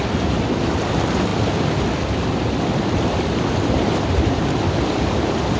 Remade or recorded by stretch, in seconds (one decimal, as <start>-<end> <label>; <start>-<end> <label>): 0.0-5.6 remade